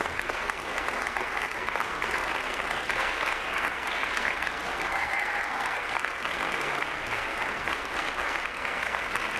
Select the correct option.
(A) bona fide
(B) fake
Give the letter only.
B